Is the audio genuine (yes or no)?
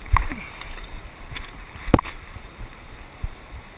yes